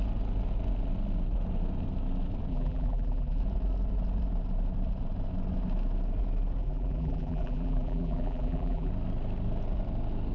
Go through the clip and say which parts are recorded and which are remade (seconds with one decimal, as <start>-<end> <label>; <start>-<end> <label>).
0.0-2.5 recorded; 2.5-3.4 remade; 3.4-6.6 recorded; 6.6-8.9 remade; 8.9-10.3 recorded